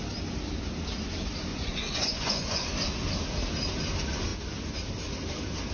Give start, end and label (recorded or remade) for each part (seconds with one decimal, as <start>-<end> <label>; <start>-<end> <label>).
0.0-1.5 recorded; 1.5-2.7 remade; 2.7-5.7 recorded